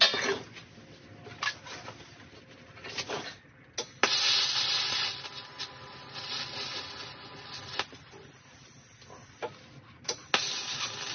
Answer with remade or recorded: recorded